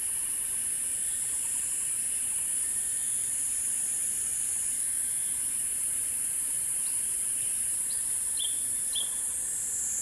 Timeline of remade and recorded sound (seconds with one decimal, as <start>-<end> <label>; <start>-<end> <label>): 0.0-5.7 recorded; 5.7-8.7 remade; 8.7-10.0 recorded